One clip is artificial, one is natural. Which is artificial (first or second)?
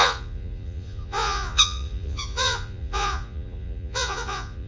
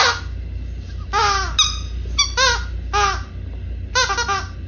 first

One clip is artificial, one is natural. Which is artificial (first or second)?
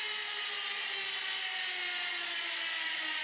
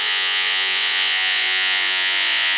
second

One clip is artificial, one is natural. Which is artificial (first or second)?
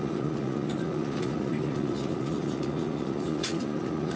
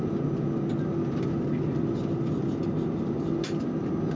first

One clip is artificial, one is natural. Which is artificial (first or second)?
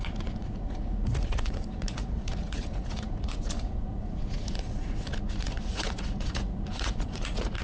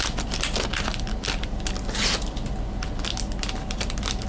first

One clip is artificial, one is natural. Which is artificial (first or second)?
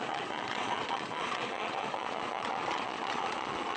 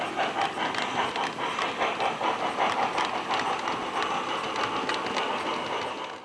first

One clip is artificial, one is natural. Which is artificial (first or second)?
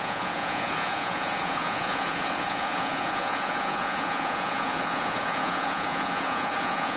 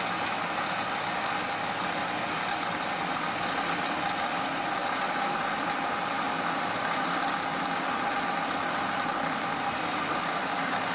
first